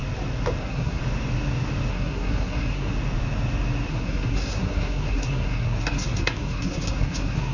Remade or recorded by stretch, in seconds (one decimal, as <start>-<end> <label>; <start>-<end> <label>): 0.0-0.6 recorded; 0.6-1.0 remade; 1.0-1.9 recorded; 1.9-2.9 remade; 2.9-3.9 recorded; 3.9-7.5 remade